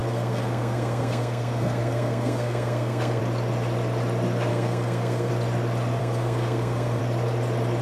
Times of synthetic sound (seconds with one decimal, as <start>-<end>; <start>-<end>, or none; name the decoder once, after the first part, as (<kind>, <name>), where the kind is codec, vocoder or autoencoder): 0.0-3.2 (codec, SNAC); 4.5-5.3; 6.0-7.0